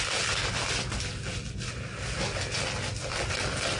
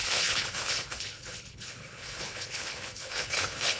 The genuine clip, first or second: first